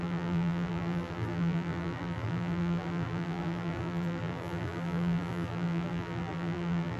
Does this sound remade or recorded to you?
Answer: remade